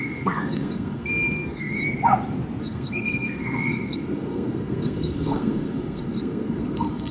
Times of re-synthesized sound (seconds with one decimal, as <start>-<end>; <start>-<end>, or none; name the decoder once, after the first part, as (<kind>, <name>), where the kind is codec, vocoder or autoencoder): 0.0-1.8 (codec, SNAC); 2.6-7.1